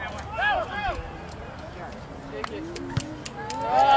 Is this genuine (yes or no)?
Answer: yes